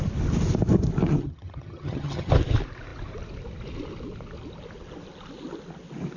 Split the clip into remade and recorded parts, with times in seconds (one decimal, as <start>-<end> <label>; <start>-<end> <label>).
0.0-1.1 recorded; 1.1-2.3 remade; 2.3-6.2 recorded